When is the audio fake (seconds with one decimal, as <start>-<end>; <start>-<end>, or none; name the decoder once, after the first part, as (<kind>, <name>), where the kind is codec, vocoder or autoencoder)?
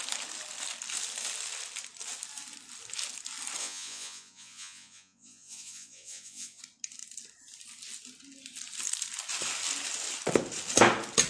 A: 3.6-6.6 (vocoder, Vocos)